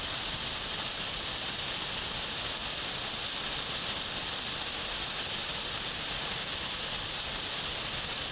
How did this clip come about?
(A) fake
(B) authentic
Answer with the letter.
B